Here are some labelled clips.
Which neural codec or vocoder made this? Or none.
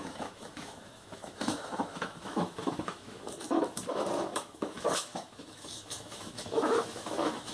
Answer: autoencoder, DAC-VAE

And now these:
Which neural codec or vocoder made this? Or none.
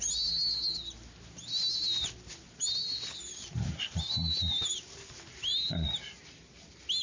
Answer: none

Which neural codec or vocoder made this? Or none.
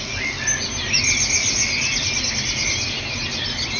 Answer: none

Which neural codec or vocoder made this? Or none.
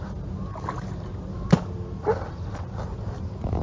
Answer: none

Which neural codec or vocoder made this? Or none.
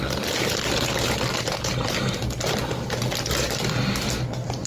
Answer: none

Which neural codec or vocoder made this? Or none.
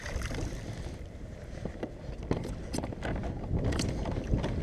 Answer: none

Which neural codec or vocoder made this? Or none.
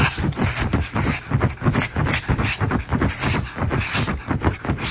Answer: none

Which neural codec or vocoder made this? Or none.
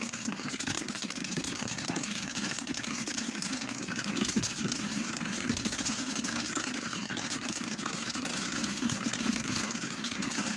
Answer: codec, SNAC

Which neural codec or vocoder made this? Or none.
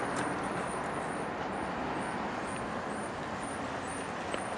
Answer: none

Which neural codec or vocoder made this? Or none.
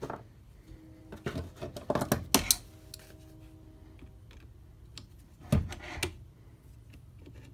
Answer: none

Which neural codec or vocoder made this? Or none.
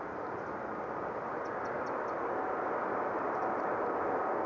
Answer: none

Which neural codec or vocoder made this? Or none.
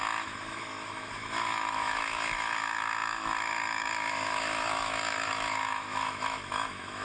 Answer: autoencoder, DAC-VAE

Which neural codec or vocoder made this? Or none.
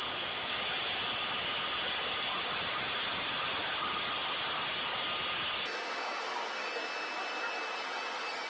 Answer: none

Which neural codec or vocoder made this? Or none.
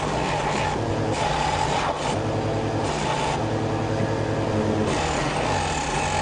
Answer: none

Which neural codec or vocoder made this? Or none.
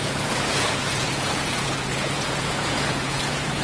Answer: vocoder, Vocos